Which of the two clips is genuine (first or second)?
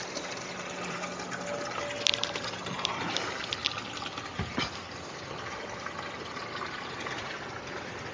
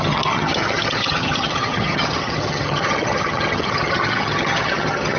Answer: first